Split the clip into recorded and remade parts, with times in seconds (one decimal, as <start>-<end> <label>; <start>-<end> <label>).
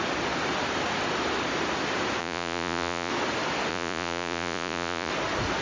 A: 0.0-2.2 recorded; 2.2-3.1 remade; 3.1-3.7 recorded; 3.7-5.1 remade; 5.1-5.6 recorded